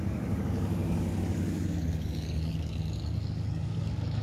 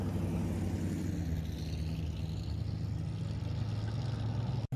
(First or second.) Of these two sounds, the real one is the second